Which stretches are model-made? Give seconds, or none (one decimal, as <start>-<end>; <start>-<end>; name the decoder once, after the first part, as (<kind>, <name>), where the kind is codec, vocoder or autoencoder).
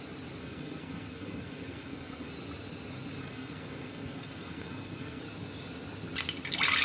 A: 0.4-2.3 (codec, SNAC); 3.2-5.2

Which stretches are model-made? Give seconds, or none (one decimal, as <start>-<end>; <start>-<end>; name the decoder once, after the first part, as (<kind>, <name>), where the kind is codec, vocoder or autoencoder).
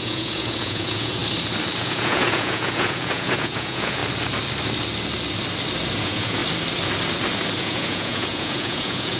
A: 0.0-1.2 (vocoder, Vocos); 1.8-4.0; 6.0-6.4; 7.6-9.2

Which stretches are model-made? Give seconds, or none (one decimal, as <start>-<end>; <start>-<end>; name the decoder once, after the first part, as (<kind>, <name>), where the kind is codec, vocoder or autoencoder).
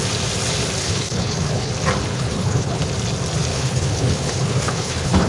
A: 0.8-1.7 (codec, HILCodec); 2.1-2.8; 3.5-5.3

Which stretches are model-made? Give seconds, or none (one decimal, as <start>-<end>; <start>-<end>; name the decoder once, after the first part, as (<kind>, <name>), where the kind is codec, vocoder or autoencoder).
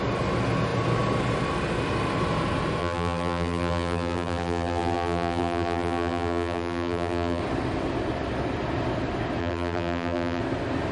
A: 2.8-7.4 (vocoder, BigVGAN v2); 9.4-10.4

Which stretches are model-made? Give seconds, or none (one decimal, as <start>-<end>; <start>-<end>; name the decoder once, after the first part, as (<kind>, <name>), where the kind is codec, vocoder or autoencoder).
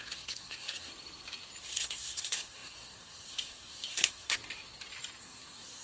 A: 0.0-0.9 (codec, SNAC); 1.6-4.4; 5.2-5.8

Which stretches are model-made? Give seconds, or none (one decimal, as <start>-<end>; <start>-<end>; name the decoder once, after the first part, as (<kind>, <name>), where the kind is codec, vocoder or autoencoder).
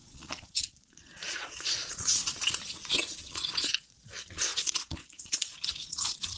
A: 0.0-6.4 (vocoder, Vocos)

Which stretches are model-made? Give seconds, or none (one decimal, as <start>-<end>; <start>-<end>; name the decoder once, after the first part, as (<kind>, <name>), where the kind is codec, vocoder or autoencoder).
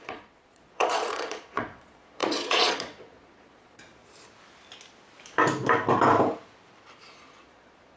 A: 0.0-4.0 (vocoder, Vocos); 7.2-8.0